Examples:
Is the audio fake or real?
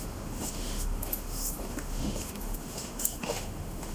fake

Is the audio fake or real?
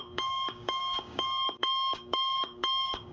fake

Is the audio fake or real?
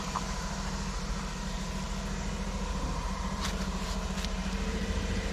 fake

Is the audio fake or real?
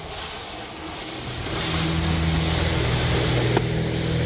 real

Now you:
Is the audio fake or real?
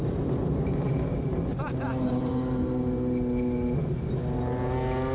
real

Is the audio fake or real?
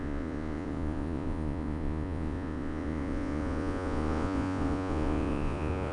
fake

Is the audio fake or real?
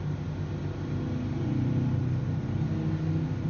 real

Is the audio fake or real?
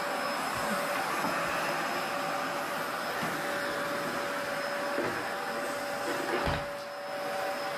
real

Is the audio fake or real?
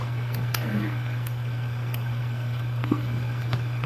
fake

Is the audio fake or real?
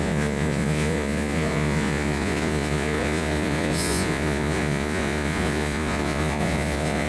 fake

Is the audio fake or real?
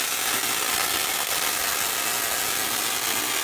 real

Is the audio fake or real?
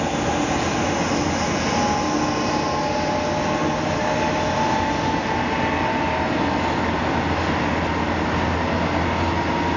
real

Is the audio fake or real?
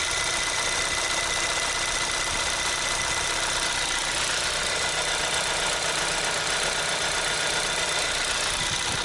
real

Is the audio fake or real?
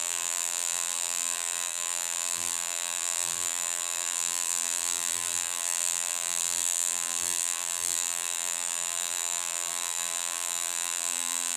fake